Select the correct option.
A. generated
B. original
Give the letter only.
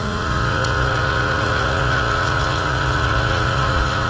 A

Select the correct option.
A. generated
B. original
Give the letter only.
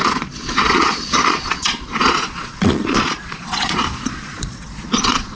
A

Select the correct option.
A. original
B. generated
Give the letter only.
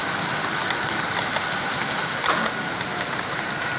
A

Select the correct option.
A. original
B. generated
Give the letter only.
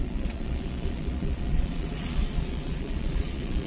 B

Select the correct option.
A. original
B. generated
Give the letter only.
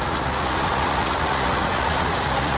B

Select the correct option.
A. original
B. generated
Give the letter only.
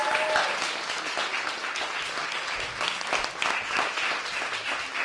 A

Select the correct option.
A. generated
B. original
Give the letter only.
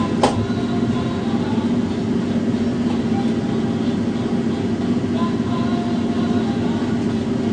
B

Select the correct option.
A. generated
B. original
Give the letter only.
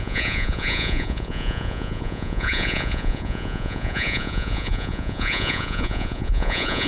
A